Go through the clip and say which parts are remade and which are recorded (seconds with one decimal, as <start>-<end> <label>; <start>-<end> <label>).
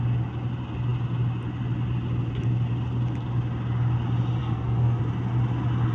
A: 0.0-4.4 recorded; 4.4-5.0 remade; 5.0-5.9 recorded